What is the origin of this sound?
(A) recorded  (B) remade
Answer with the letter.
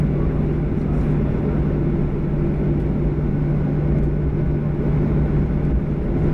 A